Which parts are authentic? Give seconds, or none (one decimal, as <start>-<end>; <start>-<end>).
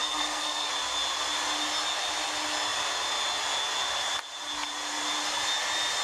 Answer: 0.7-6.0